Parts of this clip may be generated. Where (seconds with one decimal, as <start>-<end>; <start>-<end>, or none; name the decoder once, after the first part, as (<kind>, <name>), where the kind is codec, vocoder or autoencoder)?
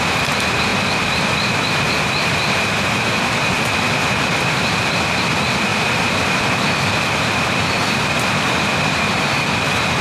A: 0.7-1.9 (vocoder, BigVGAN v2); 5.7-6.4